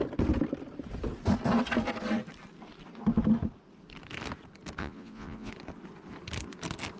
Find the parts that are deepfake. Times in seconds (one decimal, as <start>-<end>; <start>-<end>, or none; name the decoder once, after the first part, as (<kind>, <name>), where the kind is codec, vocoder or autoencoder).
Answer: 4.8-5.5 (vocoder, Vocos)